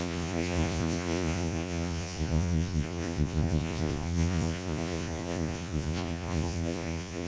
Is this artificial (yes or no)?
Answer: yes